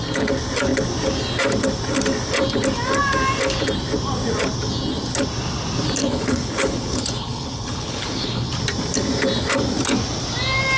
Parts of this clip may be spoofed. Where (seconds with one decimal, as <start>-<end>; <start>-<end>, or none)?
6.0-8.5